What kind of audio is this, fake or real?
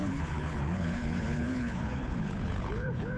fake